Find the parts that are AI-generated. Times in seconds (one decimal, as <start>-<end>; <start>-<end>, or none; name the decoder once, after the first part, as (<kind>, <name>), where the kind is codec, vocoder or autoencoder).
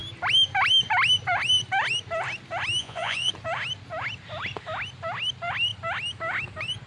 2.8-3.3 (vocoder, Vocos)